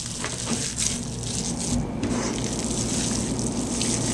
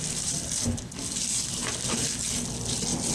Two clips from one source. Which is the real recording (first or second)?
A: first